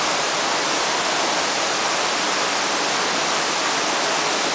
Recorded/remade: recorded